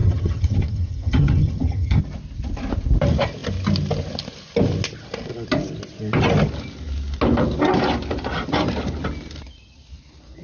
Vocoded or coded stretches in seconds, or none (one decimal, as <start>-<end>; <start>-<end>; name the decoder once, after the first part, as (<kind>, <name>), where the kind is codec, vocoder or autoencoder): 0.0-2.0 (vocoder, HiFi-GAN)